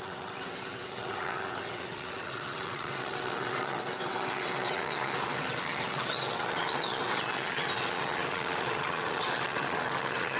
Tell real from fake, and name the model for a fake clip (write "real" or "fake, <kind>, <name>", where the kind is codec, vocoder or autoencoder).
fake, vocoder, WaveNeXt